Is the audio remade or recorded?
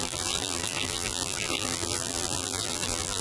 remade